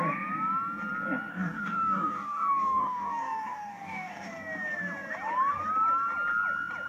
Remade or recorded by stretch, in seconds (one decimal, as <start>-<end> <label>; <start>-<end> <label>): 0.0-1.3 recorded; 1.3-4.3 remade; 4.3-6.9 recorded